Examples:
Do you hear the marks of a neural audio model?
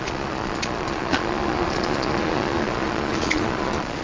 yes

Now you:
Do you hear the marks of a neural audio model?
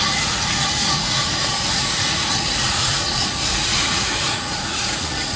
yes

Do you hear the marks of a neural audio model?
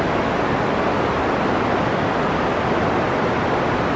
no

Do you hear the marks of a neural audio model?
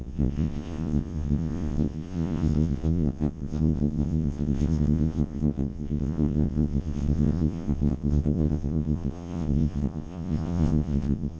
yes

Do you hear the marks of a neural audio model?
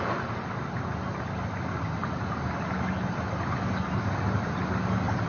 no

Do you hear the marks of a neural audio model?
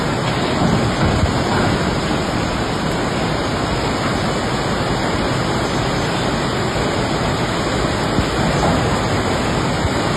no